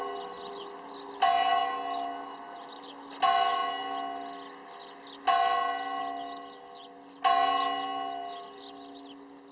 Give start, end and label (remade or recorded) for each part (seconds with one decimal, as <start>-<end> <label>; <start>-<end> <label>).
0.0-9.5 recorded